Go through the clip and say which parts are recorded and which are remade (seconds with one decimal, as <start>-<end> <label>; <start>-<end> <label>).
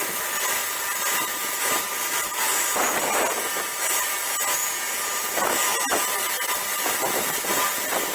0.0-0.6 remade; 0.6-4.1 recorded; 4.1-4.6 remade; 4.6-6.9 recorded; 6.9-8.1 remade